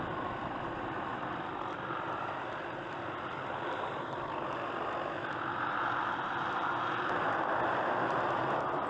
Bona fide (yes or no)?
yes